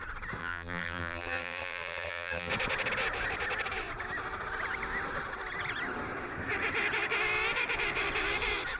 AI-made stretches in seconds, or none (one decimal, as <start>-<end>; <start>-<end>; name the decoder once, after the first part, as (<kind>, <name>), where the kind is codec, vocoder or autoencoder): 0.4-2.5 (vocoder, BigVGAN v2)